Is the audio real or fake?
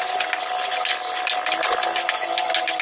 real